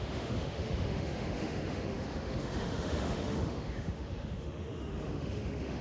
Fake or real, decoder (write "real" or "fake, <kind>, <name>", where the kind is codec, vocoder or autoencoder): fake, autoencoder, DAC-VAE